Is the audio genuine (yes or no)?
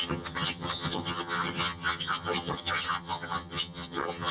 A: no